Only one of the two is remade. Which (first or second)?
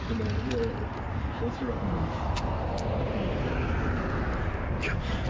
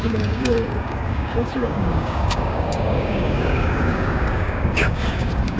second